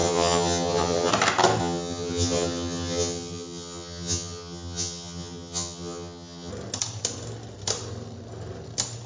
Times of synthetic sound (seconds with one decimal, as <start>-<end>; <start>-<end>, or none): 0.0-1.1; 1.6-6.5